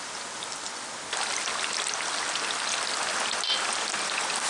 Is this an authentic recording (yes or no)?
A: yes